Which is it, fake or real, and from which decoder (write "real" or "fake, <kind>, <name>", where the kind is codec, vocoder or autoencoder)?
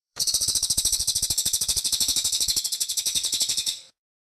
fake, codec, SNAC